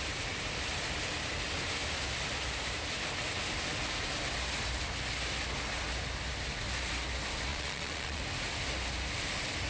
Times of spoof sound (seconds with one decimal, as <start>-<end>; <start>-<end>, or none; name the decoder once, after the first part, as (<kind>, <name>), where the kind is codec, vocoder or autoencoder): 7.5-8.2 (vocoder, Vocos)